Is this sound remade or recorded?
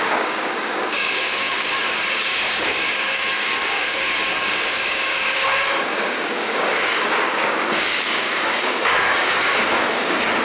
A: remade